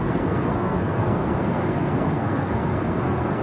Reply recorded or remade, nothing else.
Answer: remade